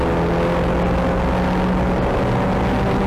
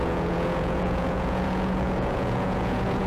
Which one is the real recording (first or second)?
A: first